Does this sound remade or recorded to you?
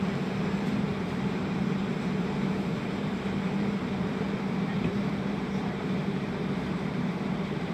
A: remade